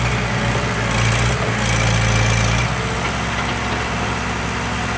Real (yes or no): yes